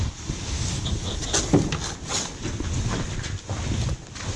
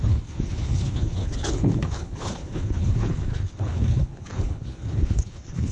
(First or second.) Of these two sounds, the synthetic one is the second